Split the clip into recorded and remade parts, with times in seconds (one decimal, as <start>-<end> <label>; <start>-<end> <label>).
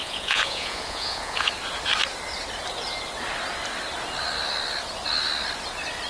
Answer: 0.0-1.5 remade; 1.5-6.1 recorded